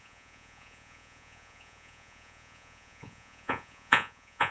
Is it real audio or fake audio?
fake